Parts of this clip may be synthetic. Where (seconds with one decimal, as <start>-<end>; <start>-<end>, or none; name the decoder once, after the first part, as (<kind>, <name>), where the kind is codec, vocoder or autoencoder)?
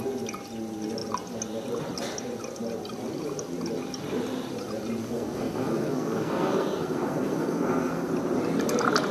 5.0-8.1 (codec, SNAC)